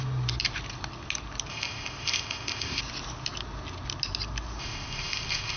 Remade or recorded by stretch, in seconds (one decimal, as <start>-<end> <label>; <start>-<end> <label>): 0.0-1.5 recorded; 1.5-2.8 remade; 2.8-4.6 recorded; 4.6-5.6 remade